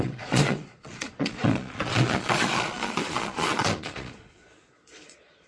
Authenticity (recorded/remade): remade